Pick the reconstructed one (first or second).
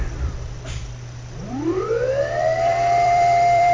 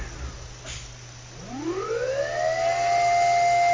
first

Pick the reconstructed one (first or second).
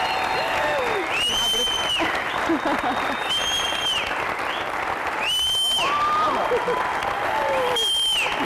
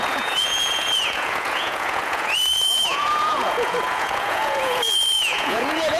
second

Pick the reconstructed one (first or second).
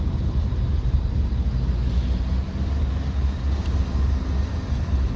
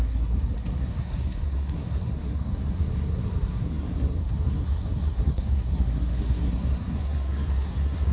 second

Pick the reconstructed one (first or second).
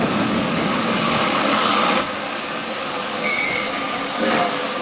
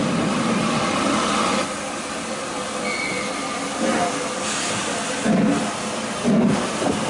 first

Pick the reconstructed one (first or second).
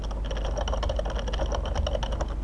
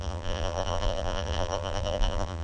second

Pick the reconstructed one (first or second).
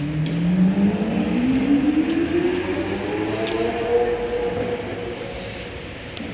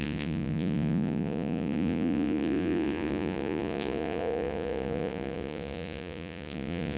second